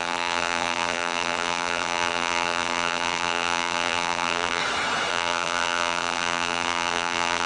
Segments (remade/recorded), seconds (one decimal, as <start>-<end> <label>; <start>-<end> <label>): 0.0-4.6 remade; 4.6-5.1 recorded; 5.1-7.5 remade